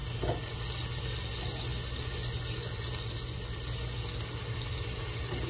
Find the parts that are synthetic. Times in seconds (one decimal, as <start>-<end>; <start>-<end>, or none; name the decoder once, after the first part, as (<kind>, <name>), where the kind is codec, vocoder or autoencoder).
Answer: none